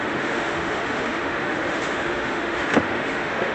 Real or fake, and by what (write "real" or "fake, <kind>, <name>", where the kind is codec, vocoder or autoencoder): fake, autoencoder, DAC-VAE